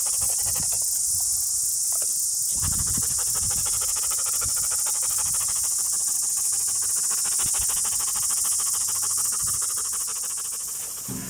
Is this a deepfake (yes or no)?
no